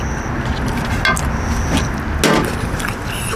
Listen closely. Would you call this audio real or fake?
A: real